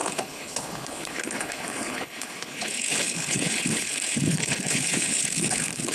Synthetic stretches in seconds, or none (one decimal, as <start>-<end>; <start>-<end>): 0.0-5.9